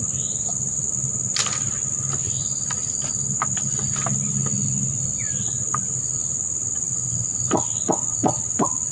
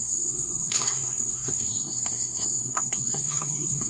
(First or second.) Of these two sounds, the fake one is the second